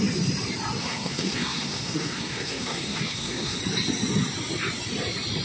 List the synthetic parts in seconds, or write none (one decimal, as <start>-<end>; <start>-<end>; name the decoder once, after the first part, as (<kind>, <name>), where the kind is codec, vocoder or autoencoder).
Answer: 0.8-3.6 (codec, SNAC)